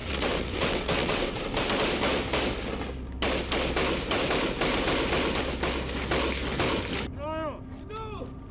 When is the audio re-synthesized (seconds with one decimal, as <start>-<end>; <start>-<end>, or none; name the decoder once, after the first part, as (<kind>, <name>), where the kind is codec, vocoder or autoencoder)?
0.0-1.4 (vocoder, WaveNeXt)